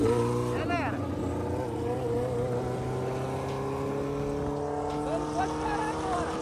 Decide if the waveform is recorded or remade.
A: recorded